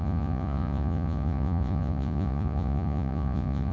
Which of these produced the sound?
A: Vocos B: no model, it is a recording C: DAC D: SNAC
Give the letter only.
A